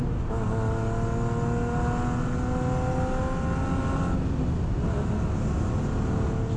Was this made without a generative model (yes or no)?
yes